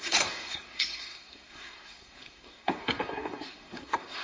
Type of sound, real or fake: fake